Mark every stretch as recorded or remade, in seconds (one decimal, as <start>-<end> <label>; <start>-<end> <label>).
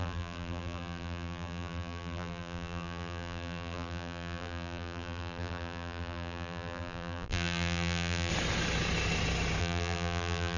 0.0-8.3 remade; 8.3-9.6 recorded; 9.6-10.6 remade